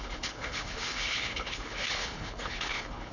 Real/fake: fake